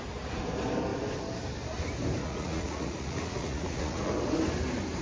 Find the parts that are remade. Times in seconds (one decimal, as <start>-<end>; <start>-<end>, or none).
2.2-4.1